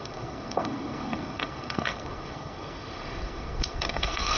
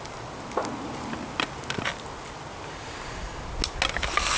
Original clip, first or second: second